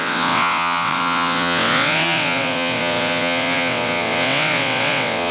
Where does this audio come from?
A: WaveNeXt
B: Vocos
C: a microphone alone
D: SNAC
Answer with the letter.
A